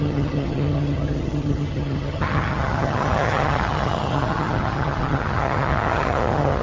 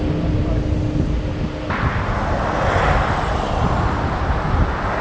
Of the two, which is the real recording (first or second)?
second